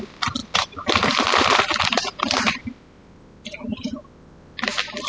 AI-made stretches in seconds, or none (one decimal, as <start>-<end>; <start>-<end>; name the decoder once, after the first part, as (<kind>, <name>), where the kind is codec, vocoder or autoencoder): none